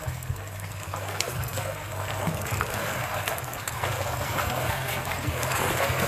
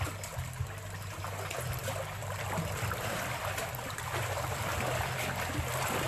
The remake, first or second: first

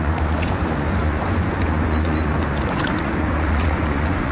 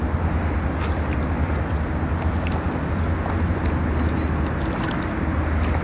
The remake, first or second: first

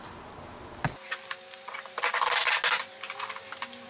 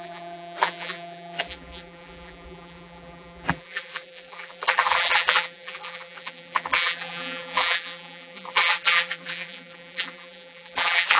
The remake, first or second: second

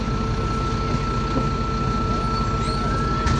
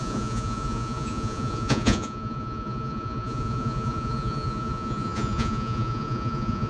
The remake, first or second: second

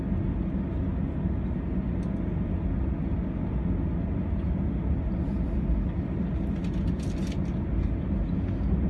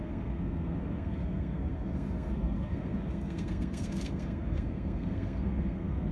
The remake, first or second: second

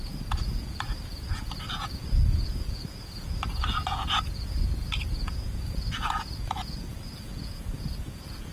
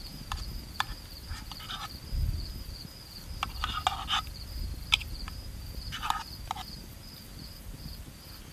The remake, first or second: first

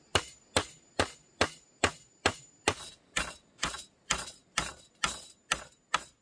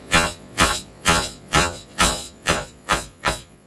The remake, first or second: second